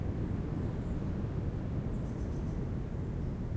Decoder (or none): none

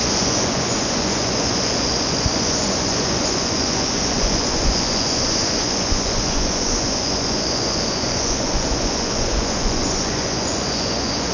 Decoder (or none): vocoder, Vocos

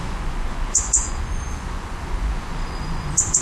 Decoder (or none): vocoder, Vocos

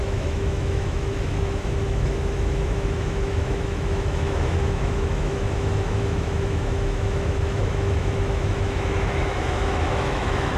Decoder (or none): autoencoder, DAC-VAE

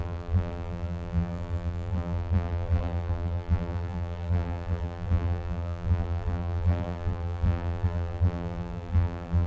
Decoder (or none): vocoder, BigVGAN v2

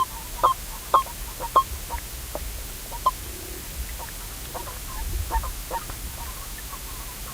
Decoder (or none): none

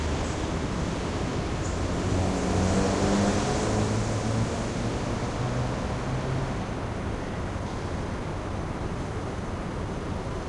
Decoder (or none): none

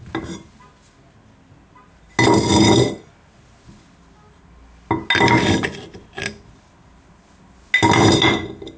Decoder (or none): none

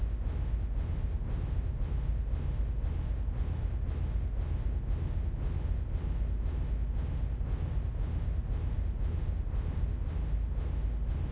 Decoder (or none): none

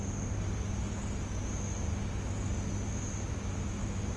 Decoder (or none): none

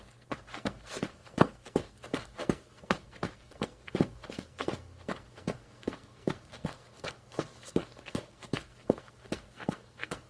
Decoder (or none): codec, SNAC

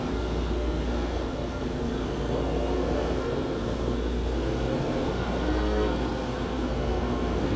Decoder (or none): codec, SNAC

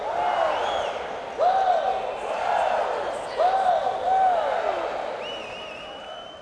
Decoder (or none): none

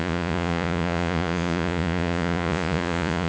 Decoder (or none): vocoder, Vocos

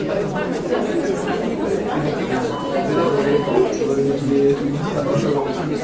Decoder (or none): none